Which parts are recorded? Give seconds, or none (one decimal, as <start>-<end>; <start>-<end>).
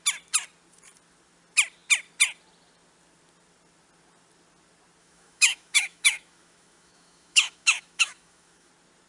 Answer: 0.0-5.0; 8.7-9.1